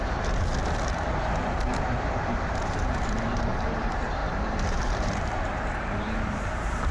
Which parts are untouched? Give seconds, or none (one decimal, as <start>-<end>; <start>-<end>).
0.5-1.7